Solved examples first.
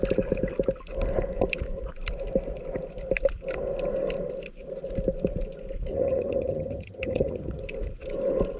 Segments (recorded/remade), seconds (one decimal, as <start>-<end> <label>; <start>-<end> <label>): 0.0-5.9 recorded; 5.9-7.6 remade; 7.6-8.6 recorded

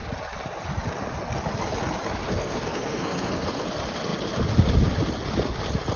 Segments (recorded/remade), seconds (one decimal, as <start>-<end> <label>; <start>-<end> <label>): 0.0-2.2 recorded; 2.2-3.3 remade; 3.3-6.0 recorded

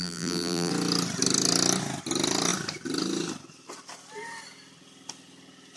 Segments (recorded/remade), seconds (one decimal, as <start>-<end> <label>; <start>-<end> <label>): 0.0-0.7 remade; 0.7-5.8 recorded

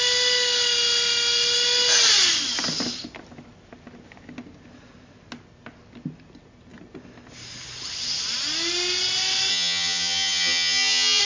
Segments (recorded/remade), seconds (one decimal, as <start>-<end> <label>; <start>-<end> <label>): 0.0-9.5 recorded; 9.5-11.2 remade